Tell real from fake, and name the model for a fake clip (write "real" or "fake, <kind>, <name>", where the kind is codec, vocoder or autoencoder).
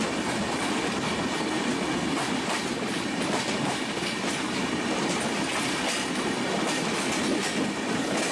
real